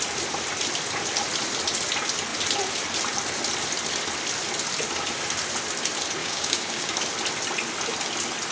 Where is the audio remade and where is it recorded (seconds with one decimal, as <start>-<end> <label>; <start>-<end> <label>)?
0.0-6.2 recorded; 6.2-6.9 remade; 6.9-8.5 recorded